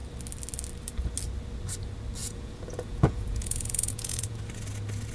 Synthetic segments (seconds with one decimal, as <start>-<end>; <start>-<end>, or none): 2.2-4.4